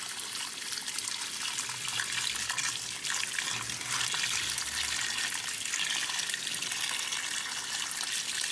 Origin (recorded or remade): recorded